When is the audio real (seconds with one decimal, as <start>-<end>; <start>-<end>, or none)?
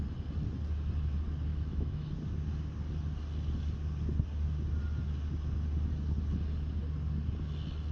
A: 0.0-1.5; 2.1-7.9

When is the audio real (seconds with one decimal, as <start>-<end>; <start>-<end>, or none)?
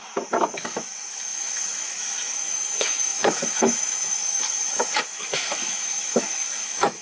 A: none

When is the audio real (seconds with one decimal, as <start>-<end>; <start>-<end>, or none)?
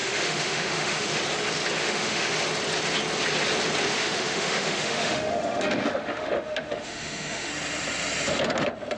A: 1.2-1.8; 2.4-3.9; 7.5-9.0